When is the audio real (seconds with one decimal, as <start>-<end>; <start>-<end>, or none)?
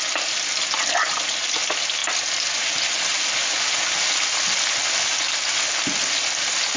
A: 0.0-6.8